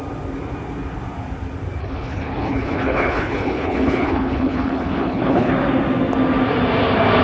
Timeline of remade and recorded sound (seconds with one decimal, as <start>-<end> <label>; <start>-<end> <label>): 0.0-1.8 recorded; 1.8-5.5 remade; 5.5-7.2 recorded